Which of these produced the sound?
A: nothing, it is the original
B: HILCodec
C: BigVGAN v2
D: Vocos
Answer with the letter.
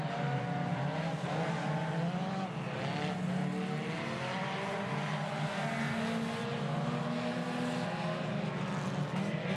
A